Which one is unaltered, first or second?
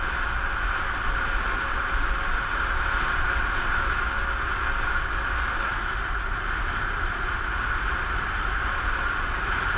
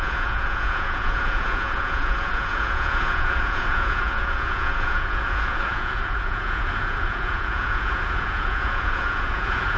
first